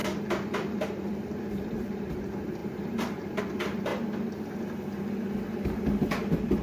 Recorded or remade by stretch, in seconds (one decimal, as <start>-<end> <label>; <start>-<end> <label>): 0.0-3.9 remade; 3.9-6.0 recorded; 6.0-6.6 remade